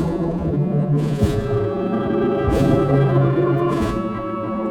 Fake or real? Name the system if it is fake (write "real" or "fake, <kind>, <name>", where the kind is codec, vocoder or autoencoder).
fake, vocoder, Vocos